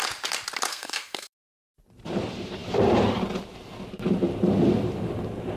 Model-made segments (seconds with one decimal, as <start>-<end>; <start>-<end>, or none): 0.7-1.6